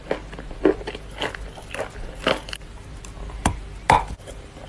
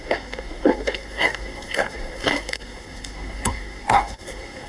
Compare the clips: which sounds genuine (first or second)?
first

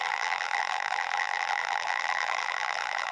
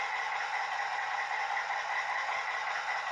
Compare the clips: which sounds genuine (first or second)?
second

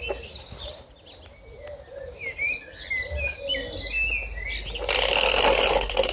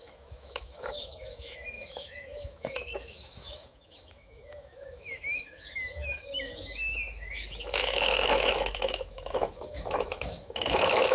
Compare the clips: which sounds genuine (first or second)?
first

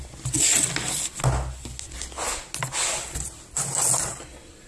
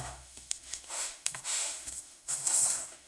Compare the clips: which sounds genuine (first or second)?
first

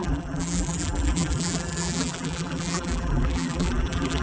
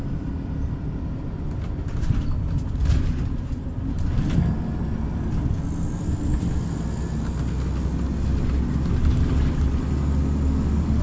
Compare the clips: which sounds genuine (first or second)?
second